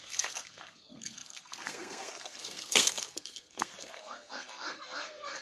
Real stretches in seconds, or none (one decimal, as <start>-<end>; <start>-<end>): none